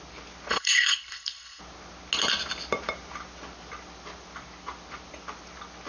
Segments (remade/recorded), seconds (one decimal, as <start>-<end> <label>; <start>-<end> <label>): 0.0-0.5 recorded; 0.5-1.6 remade; 1.6-5.9 recorded